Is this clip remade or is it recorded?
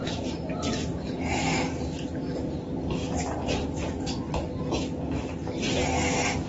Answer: recorded